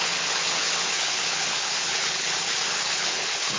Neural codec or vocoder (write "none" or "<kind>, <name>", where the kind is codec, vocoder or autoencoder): codec, HILCodec